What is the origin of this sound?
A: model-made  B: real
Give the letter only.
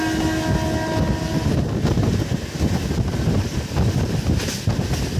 B